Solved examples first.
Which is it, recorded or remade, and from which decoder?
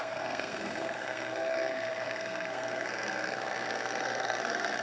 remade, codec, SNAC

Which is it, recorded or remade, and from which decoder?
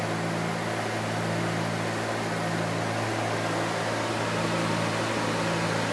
recorded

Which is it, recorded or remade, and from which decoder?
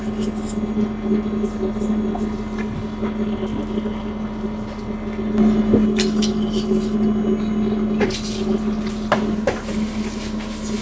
recorded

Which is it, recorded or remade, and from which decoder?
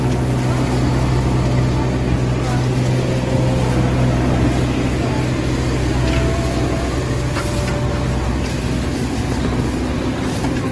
recorded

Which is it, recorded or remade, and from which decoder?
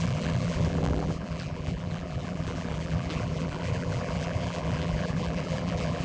remade, vocoder, BigVGAN v2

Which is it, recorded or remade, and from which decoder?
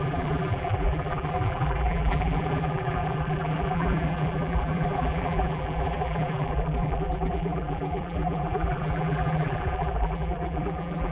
remade, vocoder, BigVGAN v2